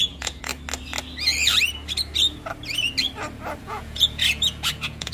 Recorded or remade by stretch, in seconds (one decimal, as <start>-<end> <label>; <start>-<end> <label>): 0.0-0.5 remade; 0.5-3.6 recorded; 3.6-5.1 remade